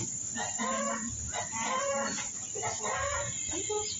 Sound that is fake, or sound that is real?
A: fake